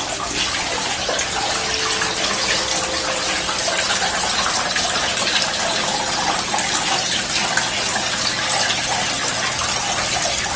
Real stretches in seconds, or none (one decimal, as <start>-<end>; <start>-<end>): 0.0-10.6